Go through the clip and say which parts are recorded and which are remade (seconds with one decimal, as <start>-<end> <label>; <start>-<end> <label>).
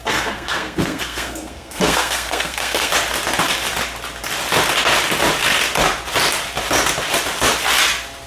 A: 0.0-2.9 remade; 2.9-8.3 recorded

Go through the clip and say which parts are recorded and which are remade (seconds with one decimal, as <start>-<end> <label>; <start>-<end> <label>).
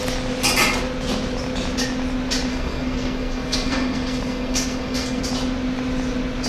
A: 0.0-2.5 recorded; 2.5-5.2 remade; 5.2-6.5 recorded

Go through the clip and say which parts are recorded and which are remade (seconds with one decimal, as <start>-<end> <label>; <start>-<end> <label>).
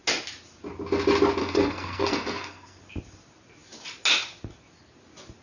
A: 0.0-1.4 recorded; 1.4-2.8 remade; 2.8-5.4 recorded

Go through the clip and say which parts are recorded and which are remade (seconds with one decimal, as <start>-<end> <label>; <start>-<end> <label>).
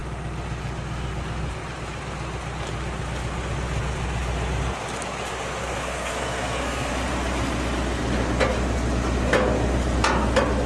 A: 0.0-5.6 recorded; 5.6-6.9 remade; 6.9-10.7 recorded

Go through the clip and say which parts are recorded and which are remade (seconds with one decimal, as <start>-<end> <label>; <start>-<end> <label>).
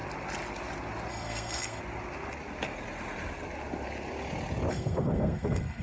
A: 0.0-1.1 recorded; 1.1-1.8 remade; 1.8-4.7 recorded; 4.7-5.8 remade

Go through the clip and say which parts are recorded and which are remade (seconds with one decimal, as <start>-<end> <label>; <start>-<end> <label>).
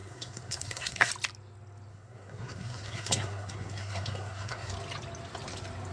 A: 0.0-1.1 remade; 1.1-1.9 recorded; 1.9-4.7 remade; 4.7-5.9 recorded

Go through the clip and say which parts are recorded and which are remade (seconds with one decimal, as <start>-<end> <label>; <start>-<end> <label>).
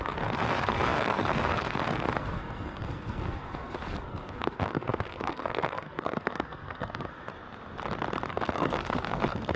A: 0.0-7.3 remade; 7.3-8.3 recorded; 8.3-9.6 remade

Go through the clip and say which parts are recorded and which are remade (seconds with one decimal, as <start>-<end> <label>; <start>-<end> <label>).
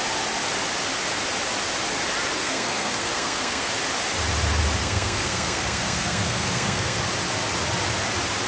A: 0.0-2.4 recorded; 2.4-3.7 remade; 3.7-4.8 recorded; 4.8-7.0 remade; 7.0-8.5 recorded